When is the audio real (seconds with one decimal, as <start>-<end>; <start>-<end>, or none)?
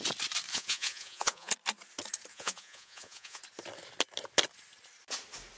0.0-0.5; 1.5-2.3; 3.4-5.6